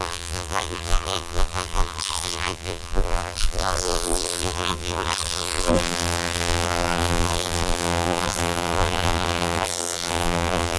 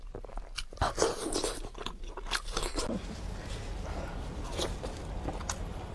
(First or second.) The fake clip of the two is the first